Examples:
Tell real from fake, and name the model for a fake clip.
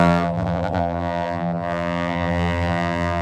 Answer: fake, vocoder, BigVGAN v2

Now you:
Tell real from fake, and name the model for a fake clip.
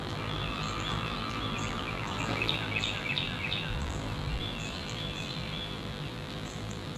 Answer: fake, vocoder, BigVGAN v2